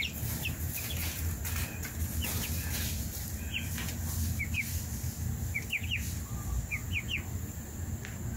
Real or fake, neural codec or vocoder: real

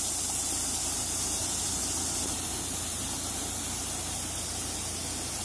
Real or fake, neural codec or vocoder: real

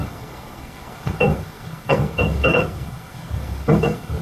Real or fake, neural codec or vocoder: fake, codec, SNAC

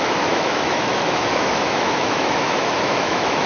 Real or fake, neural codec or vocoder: fake, autoencoder, DAC-VAE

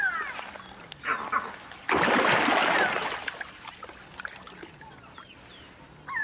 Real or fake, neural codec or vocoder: real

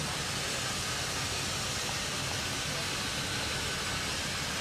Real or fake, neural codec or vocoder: real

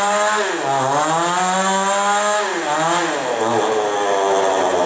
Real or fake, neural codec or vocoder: real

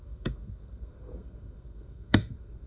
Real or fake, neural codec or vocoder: fake, codec, SNAC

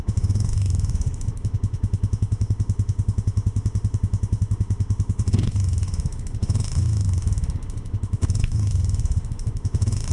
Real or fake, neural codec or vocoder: fake, autoencoder, DAC-VAE